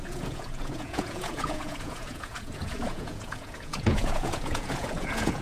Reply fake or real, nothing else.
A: fake